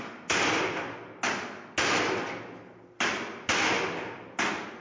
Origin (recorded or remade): recorded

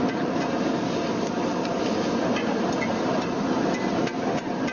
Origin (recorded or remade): recorded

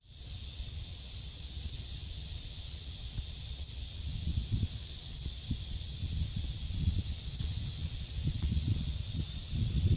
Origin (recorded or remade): remade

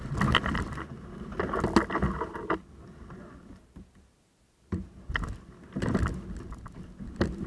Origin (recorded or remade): recorded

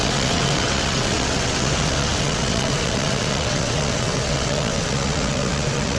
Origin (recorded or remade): remade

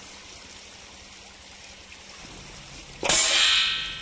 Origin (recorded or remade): recorded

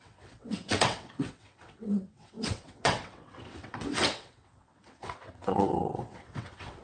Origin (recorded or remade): remade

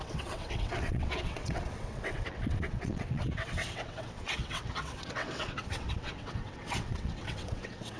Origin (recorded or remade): remade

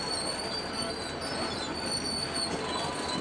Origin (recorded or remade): recorded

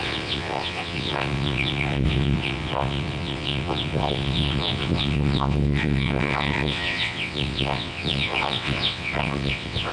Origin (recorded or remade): remade